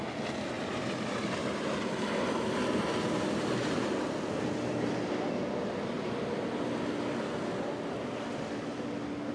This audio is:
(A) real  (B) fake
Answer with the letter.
A